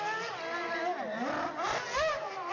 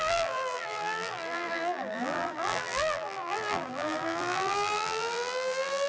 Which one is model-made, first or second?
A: second